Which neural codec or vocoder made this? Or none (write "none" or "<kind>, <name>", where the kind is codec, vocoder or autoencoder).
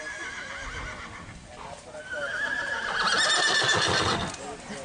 none